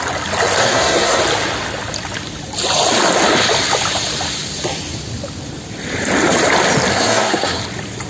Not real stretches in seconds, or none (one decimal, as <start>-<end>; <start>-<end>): 0.6-1.2; 6.9-7.6

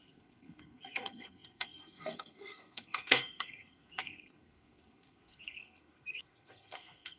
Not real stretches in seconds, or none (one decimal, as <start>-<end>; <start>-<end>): 0.0-7.2